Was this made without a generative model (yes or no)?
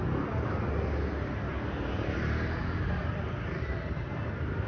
yes